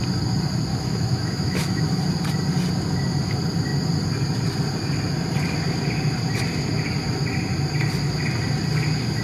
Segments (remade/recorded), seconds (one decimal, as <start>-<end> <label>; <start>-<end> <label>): 0.0-0.7 recorded; 0.7-1.8 remade; 1.8-9.2 recorded